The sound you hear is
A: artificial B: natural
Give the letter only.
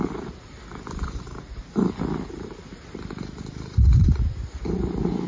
B